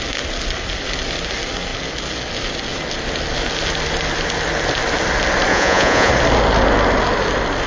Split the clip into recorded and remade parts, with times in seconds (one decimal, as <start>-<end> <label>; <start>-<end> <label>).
0.0-5.5 recorded; 5.5-6.1 remade; 6.1-7.7 recorded